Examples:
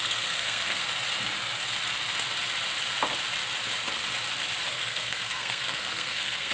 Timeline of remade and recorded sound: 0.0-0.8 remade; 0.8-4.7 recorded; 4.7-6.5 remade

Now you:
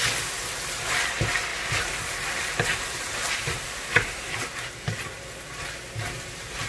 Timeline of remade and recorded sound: 0.0-1.5 recorded; 1.5-4.6 remade; 4.6-6.7 recorded

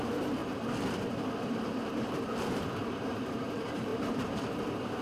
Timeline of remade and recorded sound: 0.0-5.0 remade

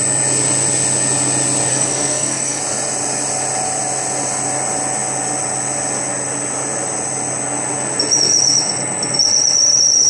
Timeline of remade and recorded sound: 0.0-1.7 recorded; 1.7-2.6 remade; 2.6-10.1 recorded

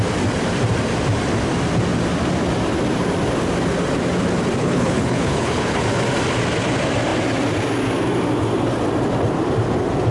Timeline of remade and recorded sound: 0.0-4.6 recorded; 4.6-5.8 remade; 5.8-10.1 recorded

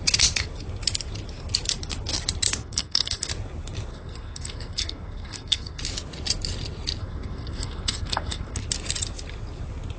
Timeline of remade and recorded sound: 0.0-2.6 recorded; 2.6-3.3 remade; 3.3-3.9 recorded; 3.9-5.8 remade; 5.8-7.0 recorded; 7.0-8.6 remade; 8.6-10.0 recorded